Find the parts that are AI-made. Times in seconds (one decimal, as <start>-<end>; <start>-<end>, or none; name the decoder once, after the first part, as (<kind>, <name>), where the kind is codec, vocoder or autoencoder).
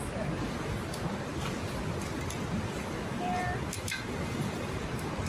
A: 0.0-2.0 (vocoder, BigVGAN v2); 2.6-5.3